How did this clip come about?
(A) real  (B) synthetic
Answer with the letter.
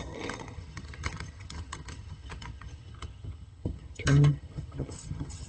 B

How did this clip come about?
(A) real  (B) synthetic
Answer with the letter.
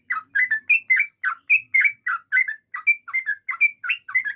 A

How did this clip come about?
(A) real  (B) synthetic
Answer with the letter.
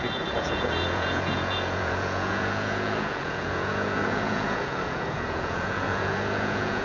B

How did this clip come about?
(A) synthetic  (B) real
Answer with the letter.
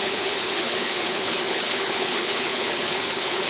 A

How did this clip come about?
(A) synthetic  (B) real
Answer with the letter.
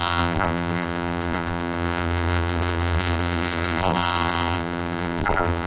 A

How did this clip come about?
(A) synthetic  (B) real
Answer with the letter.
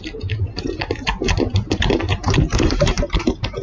A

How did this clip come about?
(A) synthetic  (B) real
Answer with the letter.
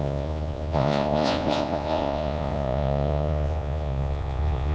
A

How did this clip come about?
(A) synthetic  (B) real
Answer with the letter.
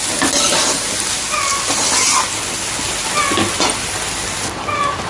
B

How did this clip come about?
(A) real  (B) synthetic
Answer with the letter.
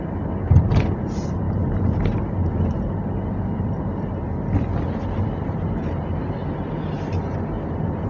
A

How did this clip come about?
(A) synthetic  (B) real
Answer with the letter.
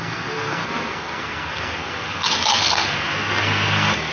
A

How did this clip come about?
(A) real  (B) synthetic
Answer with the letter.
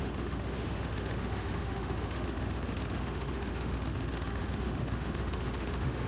B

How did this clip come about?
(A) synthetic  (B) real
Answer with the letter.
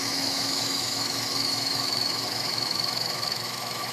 A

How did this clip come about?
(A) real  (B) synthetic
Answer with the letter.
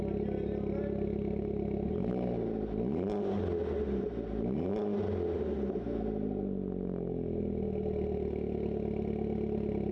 A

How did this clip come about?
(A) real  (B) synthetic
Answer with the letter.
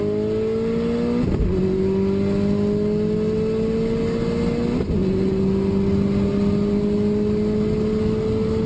A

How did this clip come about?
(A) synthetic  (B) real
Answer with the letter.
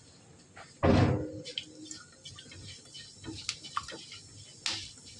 B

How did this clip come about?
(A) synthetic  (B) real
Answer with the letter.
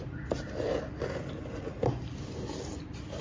B